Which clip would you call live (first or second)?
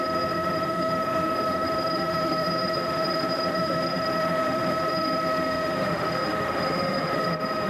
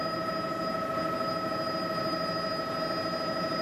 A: second